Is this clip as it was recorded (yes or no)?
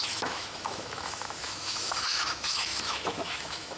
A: no